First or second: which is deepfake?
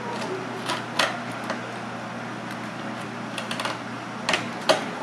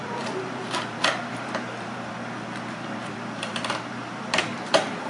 second